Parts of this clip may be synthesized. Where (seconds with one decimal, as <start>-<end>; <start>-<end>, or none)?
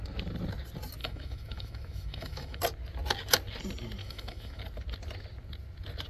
1.0-2.6; 4.0-4.6